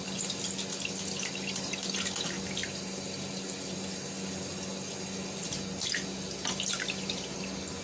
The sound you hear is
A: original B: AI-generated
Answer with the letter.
A